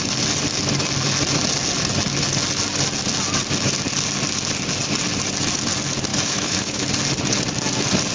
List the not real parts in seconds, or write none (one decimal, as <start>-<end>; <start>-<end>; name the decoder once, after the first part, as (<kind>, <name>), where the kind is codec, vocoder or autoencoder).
6.1-6.9 (autoencoder, DAC-VAE)